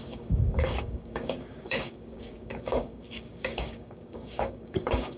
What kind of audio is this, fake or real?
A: fake